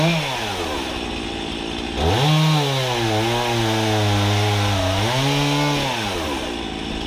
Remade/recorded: recorded